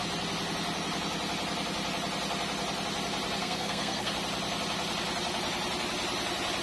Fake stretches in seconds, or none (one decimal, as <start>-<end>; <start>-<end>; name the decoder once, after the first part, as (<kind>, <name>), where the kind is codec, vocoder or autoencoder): 3.4-4.1 (codec, SNAC)